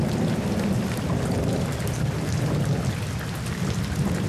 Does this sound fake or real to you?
real